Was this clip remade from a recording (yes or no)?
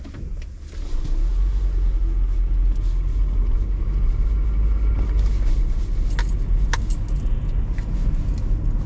no